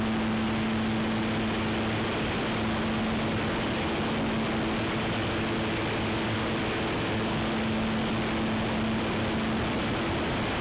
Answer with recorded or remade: recorded